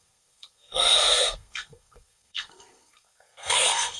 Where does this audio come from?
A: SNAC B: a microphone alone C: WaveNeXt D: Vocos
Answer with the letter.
A